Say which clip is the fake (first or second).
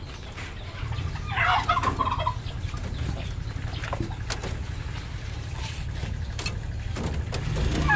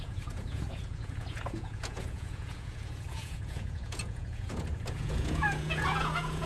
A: second